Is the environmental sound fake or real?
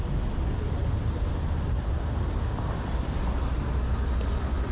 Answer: real